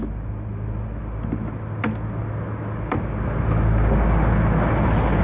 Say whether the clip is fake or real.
real